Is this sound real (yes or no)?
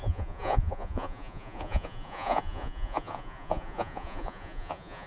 no